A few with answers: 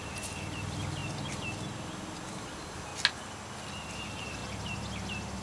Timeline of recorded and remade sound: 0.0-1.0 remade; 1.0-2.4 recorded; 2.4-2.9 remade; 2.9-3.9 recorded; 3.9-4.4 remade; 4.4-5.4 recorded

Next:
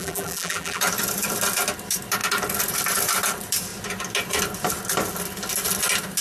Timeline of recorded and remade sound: 0.0-0.8 remade; 0.8-6.2 recorded

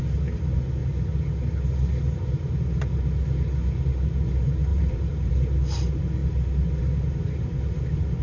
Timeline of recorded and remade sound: 0.0-4.7 recorded; 4.7-5.3 remade; 5.3-8.2 recorded

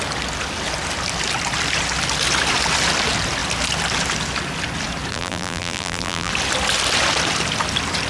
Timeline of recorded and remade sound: 0.0-5.1 recorded; 5.1-6.3 remade; 6.3-8.1 recorded

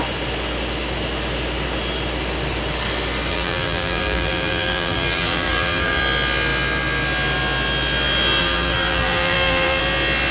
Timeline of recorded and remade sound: 0.0-3.3 recorded; 3.3-6.0 remade; 6.0-8.4 recorded; 8.4-9.8 remade; 9.8-10.3 recorded

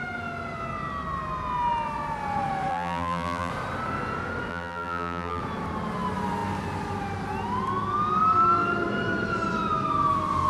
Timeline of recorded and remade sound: 0.0-2.7 recorded; 2.7-3.5 remade; 3.5-4.5 recorded; 4.5-5.4 remade; 5.4-10.5 recorded

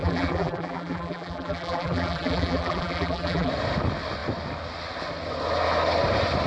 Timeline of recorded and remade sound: 0.0-3.5 remade; 3.5-6.5 recorded

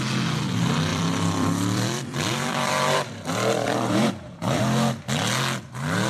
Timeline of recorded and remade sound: 0.0-0.9 recorded; 0.9-4.6 remade; 4.6-6.1 recorded